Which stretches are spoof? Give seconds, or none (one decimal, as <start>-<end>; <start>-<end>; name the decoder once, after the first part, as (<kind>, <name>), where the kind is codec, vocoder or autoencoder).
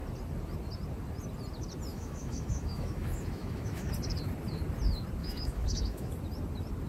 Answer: 1.9-3.9 (autoencoder, DAC-VAE); 5.2-6.1